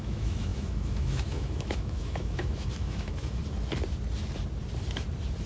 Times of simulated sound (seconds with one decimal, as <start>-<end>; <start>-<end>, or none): 0.0-3.4